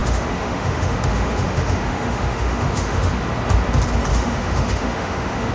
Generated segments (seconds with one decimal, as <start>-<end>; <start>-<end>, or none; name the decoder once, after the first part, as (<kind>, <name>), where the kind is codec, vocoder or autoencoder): 0.0-3.1 (autoencoder, DAC-VAE); 4.1-5.5